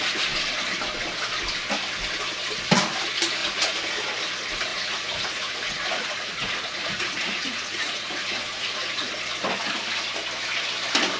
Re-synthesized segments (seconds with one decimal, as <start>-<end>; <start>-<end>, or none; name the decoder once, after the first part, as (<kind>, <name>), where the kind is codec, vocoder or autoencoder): 3.4-3.9 (vocoder, Vocos); 4.7-9.1